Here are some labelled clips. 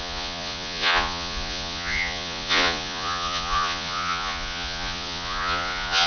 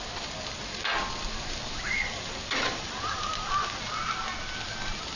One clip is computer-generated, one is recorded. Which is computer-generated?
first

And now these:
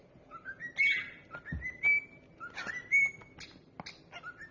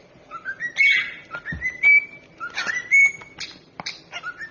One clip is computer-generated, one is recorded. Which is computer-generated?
second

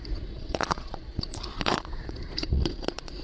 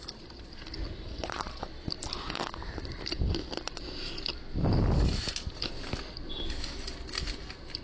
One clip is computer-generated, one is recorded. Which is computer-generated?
first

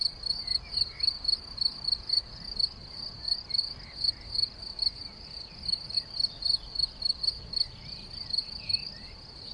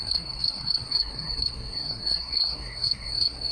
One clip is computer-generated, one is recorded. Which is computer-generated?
second